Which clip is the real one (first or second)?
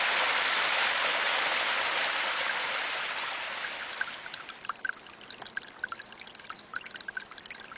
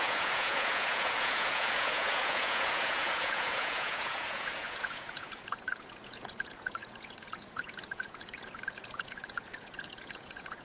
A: first